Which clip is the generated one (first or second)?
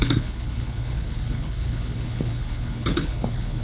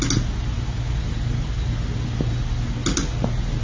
first